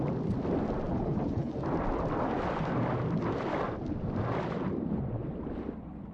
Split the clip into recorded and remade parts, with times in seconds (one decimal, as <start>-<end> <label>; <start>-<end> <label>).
0.0-0.9 recorded; 0.9-1.5 remade; 1.5-6.1 recorded

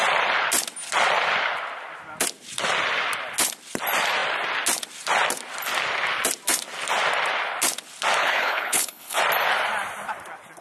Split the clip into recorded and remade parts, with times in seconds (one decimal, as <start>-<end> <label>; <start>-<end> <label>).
0.0-8.2 recorded; 8.2-9.2 remade; 9.2-10.6 recorded

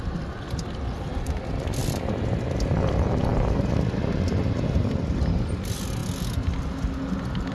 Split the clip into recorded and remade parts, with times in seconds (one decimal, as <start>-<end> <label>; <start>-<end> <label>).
0.0-7.5 recorded

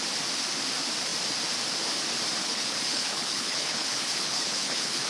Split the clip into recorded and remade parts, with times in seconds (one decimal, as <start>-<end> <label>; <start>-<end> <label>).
0.0-2.4 recorded; 2.4-5.1 remade

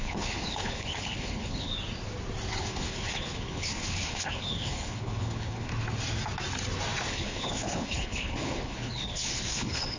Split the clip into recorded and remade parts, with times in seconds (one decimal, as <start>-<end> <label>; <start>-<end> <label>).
0.0-1.7 remade; 1.7-2.6 recorded; 2.6-5.7 remade; 5.7-7.1 recorded; 7.1-10.0 remade

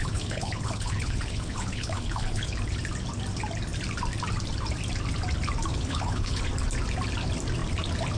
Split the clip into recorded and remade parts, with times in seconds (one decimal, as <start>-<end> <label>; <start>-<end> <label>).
0.0-2.6 remade; 2.6-5.7 recorded; 5.7-6.4 remade; 6.4-8.2 recorded

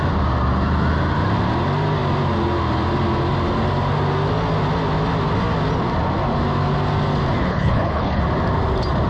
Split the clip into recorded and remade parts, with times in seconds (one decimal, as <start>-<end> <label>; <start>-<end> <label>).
0.0-7.5 recorded; 7.5-8.2 remade; 8.2-9.1 recorded